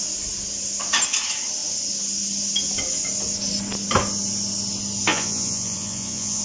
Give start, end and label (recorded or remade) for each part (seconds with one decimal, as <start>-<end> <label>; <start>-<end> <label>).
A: 0.0-5.1 recorded; 5.1-6.4 remade